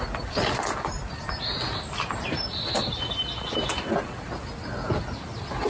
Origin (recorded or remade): recorded